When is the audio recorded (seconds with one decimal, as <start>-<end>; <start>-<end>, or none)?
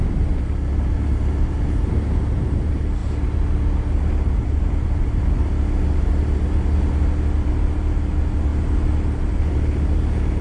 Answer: 0.0-10.4